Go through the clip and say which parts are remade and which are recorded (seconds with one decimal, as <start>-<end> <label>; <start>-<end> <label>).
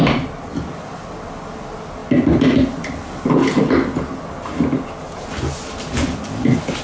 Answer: 0.0-6.8 recorded